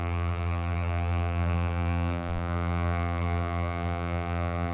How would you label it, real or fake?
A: fake